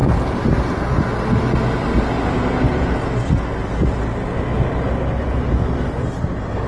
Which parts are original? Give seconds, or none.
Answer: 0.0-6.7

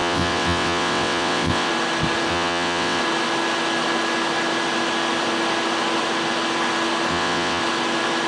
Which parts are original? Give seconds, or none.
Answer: 1.7-2.3; 3.0-7.1; 7.6-8.3